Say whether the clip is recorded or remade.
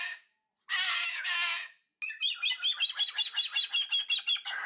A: recorded